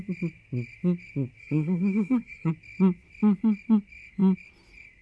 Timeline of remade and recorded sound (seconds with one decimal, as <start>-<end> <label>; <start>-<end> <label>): 0.0-1.4 recorded; 1.4-2.5 remade; 2.5-5.0 recorded